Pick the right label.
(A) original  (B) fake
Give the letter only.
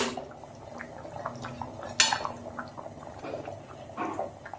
A